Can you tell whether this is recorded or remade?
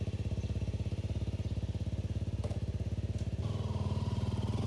recorded